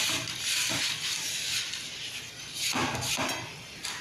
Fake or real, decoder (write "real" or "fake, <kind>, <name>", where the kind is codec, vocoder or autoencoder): real